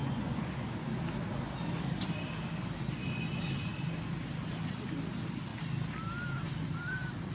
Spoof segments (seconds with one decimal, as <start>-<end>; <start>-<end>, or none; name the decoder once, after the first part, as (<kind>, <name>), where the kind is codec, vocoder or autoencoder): 0.0-0.8 (vocoder, Vocos)